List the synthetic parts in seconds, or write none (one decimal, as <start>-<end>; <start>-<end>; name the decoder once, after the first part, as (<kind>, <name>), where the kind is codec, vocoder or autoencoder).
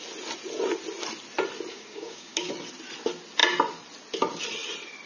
1.7-2.5 (codec, DAC)